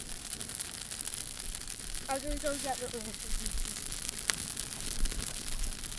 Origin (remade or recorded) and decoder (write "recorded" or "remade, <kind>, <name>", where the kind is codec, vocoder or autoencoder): recorded